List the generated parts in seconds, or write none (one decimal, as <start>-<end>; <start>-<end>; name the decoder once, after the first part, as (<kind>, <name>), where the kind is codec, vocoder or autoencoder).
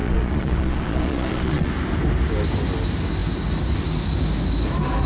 0.0-1.7 (vocoder, Vocos)